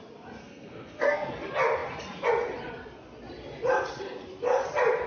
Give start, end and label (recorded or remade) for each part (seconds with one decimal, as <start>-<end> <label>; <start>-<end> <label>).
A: 0.0-0.4 recorded; 0.4-1.3 remade; 1.3-5.1 recorded